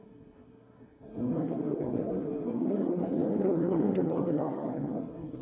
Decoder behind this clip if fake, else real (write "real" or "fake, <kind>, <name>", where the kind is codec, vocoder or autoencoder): fake, codec, SNAC